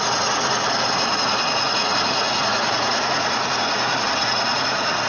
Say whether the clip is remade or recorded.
remade